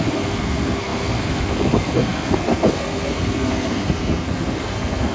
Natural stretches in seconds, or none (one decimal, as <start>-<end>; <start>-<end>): none